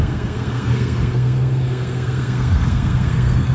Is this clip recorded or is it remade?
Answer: remade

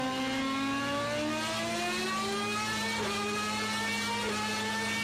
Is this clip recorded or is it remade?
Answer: recorded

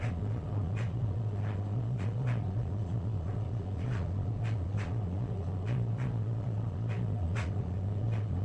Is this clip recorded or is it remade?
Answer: remade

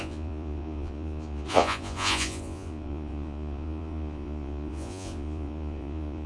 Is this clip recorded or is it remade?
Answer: remade